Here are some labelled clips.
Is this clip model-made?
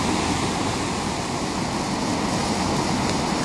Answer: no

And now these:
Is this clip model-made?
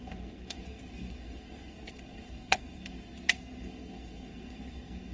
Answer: yes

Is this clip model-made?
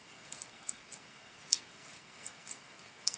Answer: yes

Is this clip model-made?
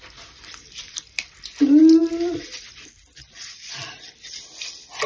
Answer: no